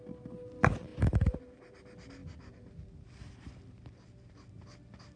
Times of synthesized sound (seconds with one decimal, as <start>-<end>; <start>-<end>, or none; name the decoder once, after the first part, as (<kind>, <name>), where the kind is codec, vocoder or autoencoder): none